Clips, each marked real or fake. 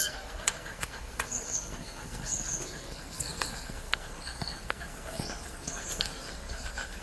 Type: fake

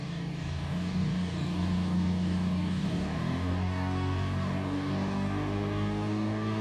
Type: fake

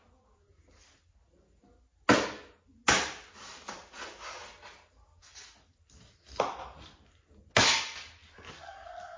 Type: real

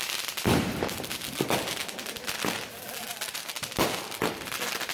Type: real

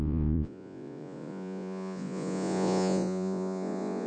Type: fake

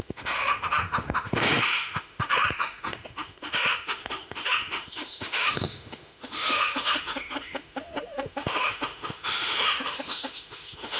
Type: fake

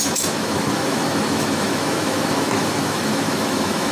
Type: fake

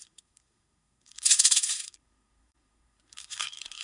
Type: fake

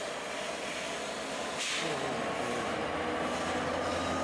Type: real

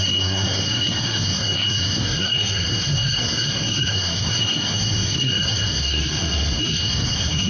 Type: fake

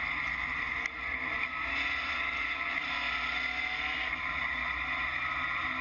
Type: real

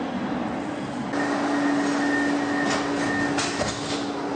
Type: real